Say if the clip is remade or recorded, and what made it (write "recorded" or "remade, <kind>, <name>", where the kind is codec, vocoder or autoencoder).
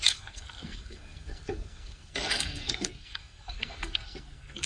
remade, codec, SNAC